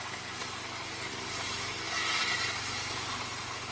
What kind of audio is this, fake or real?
real